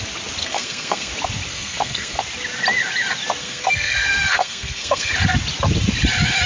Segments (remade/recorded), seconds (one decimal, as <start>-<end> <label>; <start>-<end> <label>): 0.0-0.4 recorded; 0.4-1.1 remade; 1.1-1.5 recorded; 1.5-2.2 remade; 2.2-3.4 recorded; 3.4-5.1 remade; 5.1-6.5 recorded